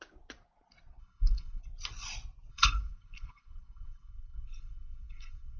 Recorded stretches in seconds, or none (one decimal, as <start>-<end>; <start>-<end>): 0.0-1.0; 1.6-2.5